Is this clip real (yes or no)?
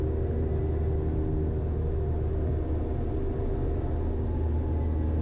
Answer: yes